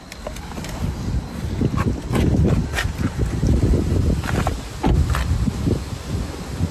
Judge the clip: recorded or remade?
recorded